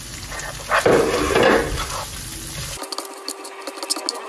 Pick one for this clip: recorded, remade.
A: recorded